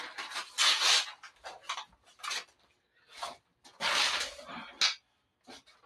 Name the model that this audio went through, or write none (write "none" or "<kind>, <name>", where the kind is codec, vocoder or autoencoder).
none